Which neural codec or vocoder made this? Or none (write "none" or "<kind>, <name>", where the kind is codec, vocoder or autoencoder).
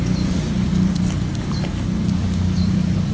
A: vocoder, BigVGAN v2